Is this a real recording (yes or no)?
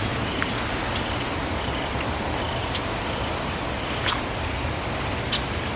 yes